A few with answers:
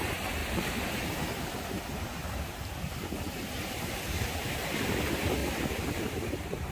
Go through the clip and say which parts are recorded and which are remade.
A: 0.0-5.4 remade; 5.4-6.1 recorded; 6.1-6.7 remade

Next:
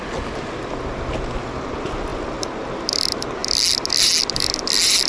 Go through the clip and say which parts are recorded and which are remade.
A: 0.0-5.1 recorded